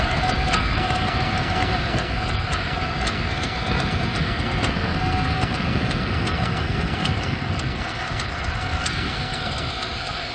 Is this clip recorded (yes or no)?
no